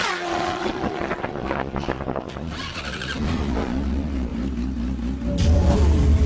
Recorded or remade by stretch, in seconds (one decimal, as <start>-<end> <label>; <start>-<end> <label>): 0.0-4.3 remade; 4.3-6.3 recorded